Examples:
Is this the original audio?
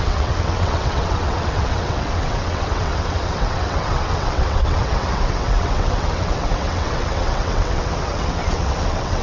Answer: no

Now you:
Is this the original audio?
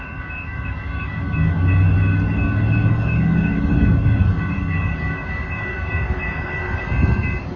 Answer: no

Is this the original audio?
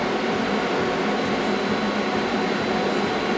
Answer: yes